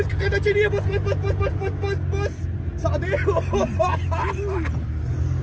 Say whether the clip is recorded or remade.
recorded